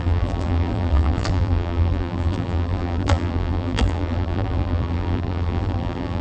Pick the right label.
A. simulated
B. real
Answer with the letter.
A